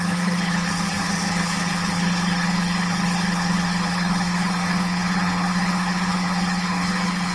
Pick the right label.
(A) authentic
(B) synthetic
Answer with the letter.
B